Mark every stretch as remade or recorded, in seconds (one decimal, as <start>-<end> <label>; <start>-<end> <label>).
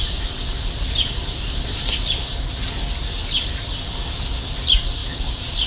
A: 0.0-2.2 remade; 2.2-5.0 recorded; 5.0-5.7 remade